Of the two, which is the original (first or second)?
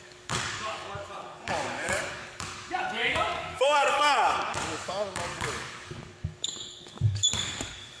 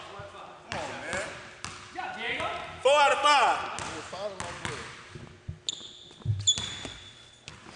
second